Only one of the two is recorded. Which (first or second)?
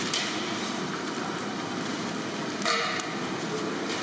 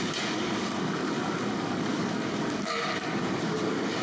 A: first